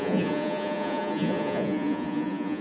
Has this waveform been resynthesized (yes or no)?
yes